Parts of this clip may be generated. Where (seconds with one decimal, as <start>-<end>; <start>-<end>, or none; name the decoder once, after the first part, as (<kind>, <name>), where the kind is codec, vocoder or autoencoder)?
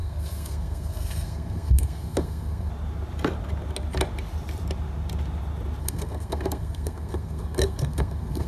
0.0-2.7 (codec, SNAC); 5.8-8.5